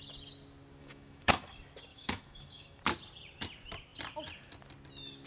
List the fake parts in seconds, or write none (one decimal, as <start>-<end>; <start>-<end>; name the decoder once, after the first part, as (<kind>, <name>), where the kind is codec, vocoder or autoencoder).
0.8-1.3 (autoencoder, DAC-VAE); 1.9-2.8